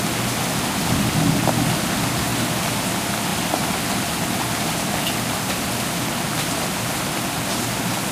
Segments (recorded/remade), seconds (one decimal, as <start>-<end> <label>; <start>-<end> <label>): 0.0-8.1 recorded